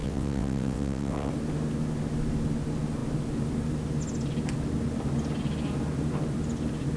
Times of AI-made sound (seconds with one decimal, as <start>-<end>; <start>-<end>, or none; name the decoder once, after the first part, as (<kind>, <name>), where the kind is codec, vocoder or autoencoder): 0.0-1.3 (vocoder, WaveNeXt)